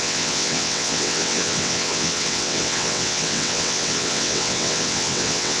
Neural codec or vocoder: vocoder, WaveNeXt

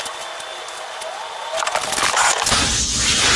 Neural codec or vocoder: none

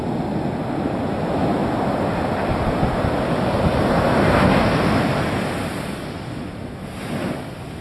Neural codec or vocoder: none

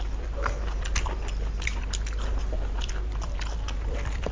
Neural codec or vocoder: none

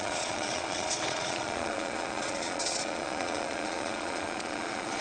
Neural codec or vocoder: vocoder, Vocos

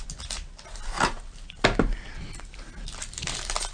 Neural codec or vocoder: none